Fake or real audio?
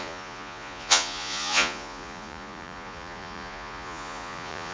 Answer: fake